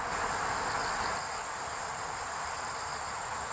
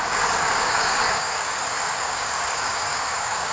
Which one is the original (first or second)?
first